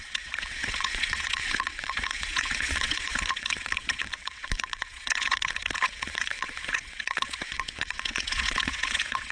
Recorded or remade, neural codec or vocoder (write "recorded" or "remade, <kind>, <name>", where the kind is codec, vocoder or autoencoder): remade, vocoder, WaveNeXt